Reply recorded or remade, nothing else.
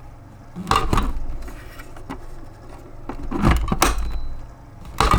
recorded